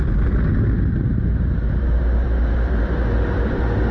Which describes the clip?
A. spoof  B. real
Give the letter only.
B